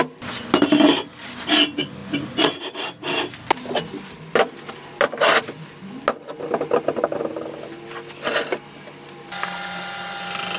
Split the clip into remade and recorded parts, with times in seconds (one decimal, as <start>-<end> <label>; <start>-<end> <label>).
0.0-10.6 recorded